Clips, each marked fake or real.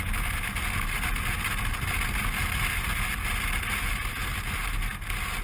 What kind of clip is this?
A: real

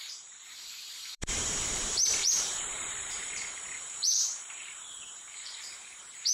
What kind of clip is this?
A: fake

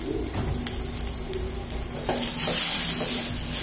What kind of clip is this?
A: real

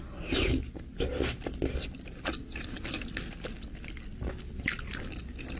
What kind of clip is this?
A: real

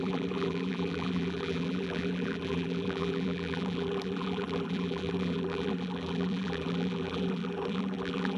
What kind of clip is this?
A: fake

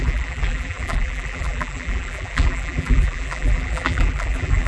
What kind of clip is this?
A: fake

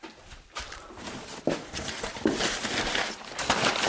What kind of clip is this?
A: real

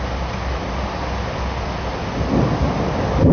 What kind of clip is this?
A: real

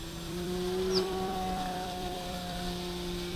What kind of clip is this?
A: fake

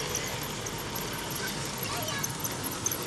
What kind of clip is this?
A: real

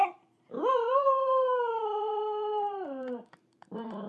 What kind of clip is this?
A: fake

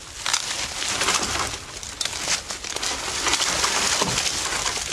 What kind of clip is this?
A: real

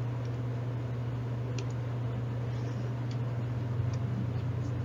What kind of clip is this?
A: real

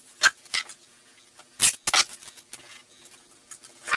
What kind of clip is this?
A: real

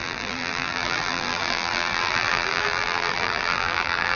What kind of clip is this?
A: fake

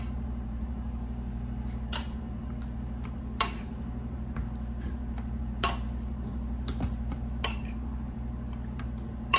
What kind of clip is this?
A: fake